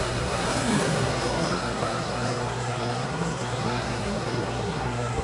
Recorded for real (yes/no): no